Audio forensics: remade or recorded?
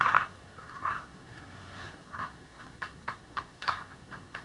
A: remade